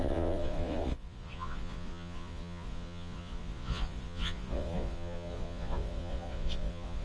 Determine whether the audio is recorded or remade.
remade